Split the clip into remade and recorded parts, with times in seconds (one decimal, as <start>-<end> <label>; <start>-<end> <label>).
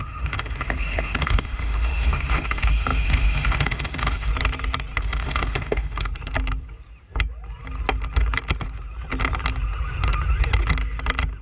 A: 0.0-4.3 remade; 4.3-5.0 recorded; 5.0-6.1 remade; 6.1-11.4 recorded